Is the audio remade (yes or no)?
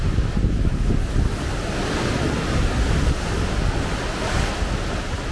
no